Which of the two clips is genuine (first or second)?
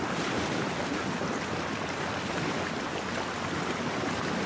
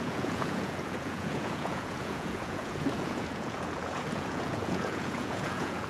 first